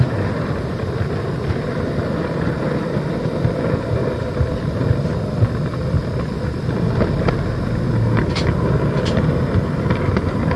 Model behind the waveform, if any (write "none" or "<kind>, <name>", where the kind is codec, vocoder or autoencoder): none